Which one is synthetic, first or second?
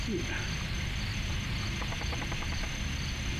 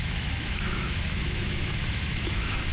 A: second